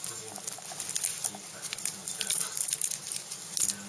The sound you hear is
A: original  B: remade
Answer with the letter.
B